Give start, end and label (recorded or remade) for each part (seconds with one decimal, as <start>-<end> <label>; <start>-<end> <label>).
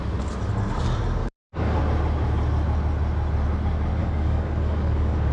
0.0-1.2 recorded; 1.2-1.8 remade; 1.8-4.0 recorded; 4.0-5.3 remade